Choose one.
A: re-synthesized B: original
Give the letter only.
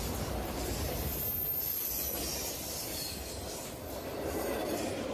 B